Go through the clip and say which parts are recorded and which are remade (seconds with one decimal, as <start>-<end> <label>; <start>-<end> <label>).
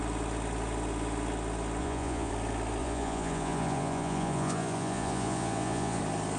0.0-1.8 recorded; 1.8-2.3 remade; 2.3-2.8 recorded; 2.8-6.0 remade; 6.0-6.4 recorded